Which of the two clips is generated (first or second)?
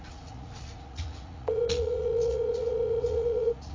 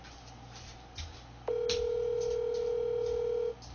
first